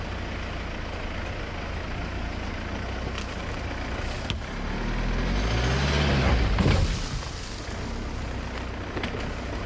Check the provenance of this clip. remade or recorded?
recorded